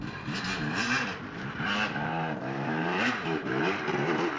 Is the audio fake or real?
fake